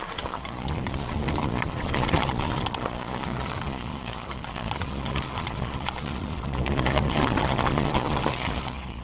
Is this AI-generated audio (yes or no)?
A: yes